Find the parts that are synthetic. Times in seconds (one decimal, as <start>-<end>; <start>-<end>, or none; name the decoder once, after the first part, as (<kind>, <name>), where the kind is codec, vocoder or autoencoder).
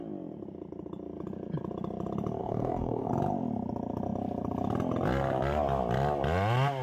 2.4-3.1 (codec, DAC)